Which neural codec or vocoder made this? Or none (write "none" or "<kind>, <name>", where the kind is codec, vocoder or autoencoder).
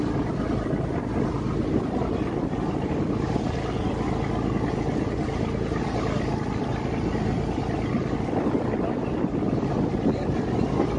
none